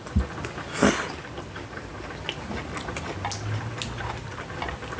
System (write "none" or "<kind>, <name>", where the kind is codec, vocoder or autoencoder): none